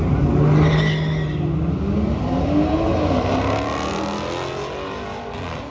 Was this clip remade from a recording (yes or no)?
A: no